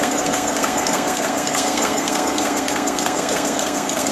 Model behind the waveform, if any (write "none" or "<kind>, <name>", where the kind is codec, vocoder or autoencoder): codec, SNAC